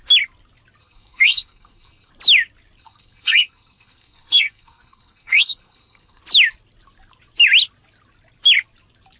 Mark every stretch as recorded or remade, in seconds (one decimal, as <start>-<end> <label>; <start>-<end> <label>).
0.0-0.8 recorded; 0.8-2.1 remade; 2.1-2.8 recorded; 2.8-6.2 remade; 6.2-9.2 recorded